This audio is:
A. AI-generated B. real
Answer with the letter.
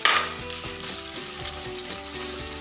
B